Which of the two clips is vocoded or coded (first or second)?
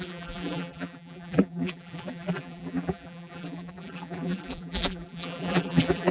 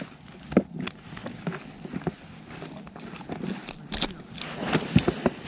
first